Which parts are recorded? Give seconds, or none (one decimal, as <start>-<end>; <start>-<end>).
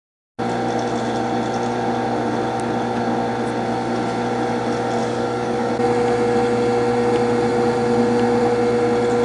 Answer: 0.0-5.0; 5.7-9.2